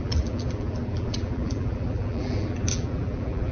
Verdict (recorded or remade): remade